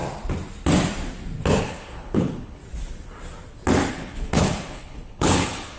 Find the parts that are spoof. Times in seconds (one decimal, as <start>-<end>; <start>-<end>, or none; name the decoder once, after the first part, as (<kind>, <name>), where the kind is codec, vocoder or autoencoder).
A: 1.6-2.6 (codec, HILCodec); 3.9-5.8